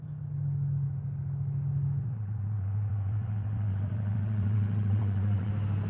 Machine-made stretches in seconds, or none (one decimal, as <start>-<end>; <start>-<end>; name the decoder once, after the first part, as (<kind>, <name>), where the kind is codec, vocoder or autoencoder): 2.0-5.5 (vocoder, WaveNeXt)